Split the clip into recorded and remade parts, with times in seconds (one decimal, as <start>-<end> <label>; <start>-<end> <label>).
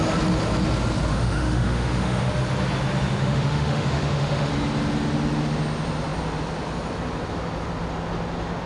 0.0-1.1 recorded; 1.1-2.3 remade; 2.3-3.2 recorded; 3.2-4.5 remade; 4.5-8.7 recorded